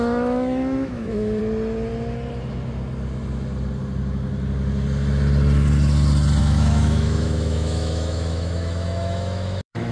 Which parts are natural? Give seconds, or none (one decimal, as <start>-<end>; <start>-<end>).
1.4-6.4